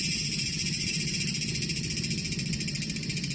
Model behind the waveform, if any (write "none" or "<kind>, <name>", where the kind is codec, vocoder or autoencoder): none